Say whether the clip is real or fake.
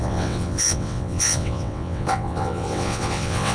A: fake